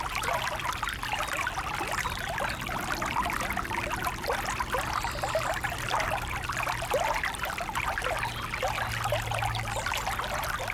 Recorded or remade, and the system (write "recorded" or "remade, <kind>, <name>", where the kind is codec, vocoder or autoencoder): recorded